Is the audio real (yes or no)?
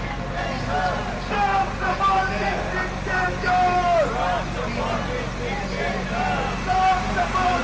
yes